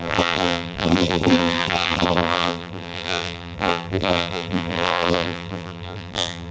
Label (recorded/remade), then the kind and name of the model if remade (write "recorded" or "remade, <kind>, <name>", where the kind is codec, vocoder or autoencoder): remade, vocoder, BigVGAN v2